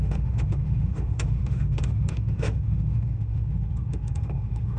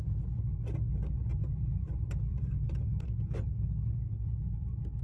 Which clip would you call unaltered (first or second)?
second